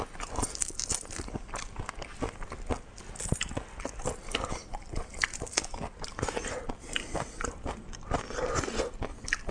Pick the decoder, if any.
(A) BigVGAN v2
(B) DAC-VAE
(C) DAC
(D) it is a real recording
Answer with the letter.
D